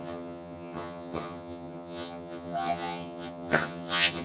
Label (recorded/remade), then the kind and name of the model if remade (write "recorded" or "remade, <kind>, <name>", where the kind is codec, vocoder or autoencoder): remade, vocoder, HiFi-GAN